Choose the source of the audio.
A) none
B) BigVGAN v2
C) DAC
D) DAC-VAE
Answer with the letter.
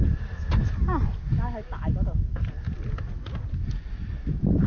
A